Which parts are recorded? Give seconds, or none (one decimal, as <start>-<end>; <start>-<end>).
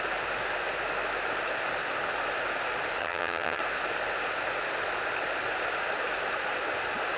0.0-3.0; 3.6-7.2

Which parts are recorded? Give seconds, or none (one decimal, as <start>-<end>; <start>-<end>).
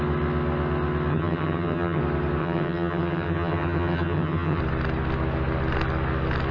0.0-1.1; 2.0-2.4; 4.6-6.5